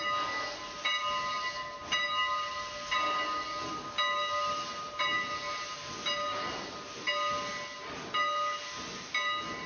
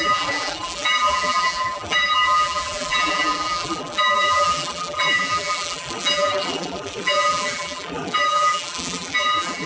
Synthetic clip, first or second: second